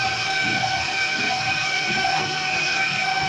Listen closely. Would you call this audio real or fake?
fake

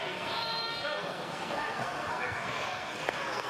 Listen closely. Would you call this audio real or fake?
fake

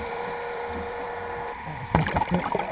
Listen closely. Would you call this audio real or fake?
fake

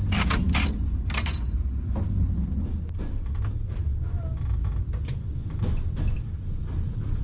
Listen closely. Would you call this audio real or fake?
real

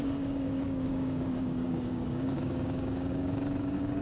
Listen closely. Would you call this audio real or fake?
fake